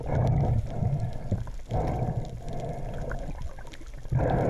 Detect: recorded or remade recorded